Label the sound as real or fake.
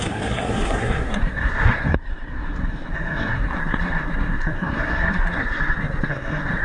fake